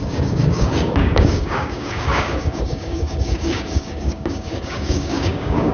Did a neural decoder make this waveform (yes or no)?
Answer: yes